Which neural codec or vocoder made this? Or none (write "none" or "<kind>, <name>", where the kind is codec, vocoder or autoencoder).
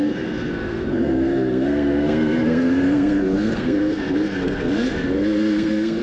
codec, SNAC